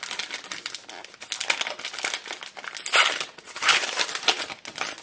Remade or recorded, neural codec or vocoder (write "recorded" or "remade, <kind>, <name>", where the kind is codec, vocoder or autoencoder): recorded